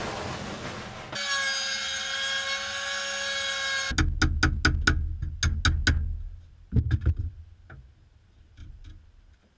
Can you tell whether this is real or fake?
real